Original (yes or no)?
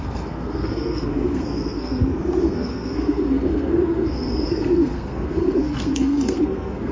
no